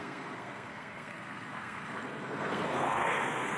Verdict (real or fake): fake